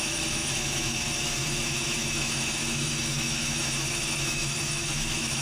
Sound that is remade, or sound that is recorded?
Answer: remade